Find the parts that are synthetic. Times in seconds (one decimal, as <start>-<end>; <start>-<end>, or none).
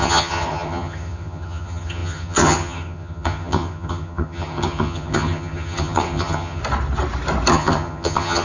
0.0-6.6; 7.5-8.4